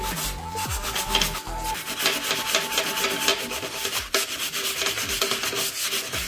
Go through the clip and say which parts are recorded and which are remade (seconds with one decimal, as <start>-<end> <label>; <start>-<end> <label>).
0.0-3.3 recorded; 3.3-4.0 remade; 4.0-6.3 recorded

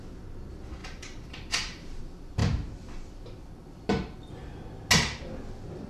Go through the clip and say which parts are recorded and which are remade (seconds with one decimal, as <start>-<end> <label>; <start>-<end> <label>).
0.0-0.8 recorded; 0.8-2.0 remade; 2.0-5.9 recorded

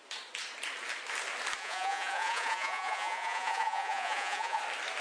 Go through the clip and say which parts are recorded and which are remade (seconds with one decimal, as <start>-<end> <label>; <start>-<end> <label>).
0.0-1.6 recorded; 1.6-4.6 remade; 4.6-5.0 recorded